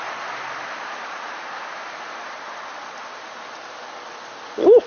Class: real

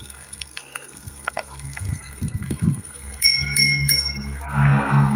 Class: fake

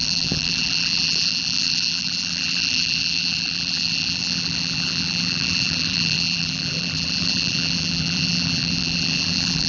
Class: fake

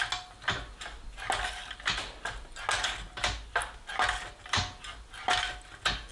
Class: real